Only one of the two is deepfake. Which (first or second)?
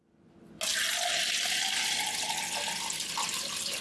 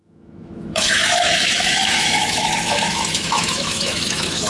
second